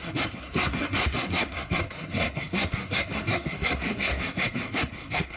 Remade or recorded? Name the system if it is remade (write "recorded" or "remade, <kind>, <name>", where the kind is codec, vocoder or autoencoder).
remade, codec, SNAC